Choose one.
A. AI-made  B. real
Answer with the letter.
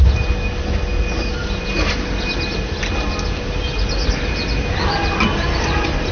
B